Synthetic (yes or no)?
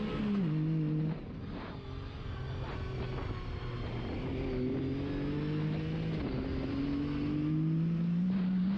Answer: no